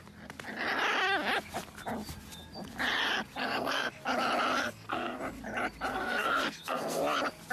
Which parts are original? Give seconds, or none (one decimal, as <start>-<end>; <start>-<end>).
0.0-3.4; 3.9-4.6; 5.2-5.9; 7.0-7.5